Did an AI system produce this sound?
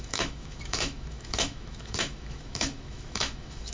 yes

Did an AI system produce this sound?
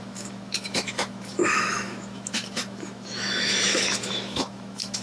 yes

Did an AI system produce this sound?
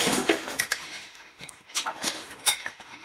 yes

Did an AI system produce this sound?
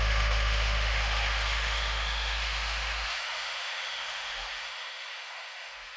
yes